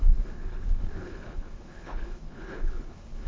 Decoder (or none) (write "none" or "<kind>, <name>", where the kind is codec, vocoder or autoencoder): codec, HILCodec